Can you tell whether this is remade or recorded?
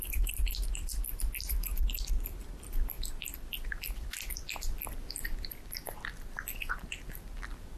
recorded